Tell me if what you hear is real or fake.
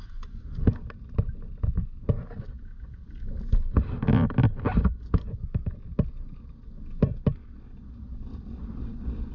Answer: real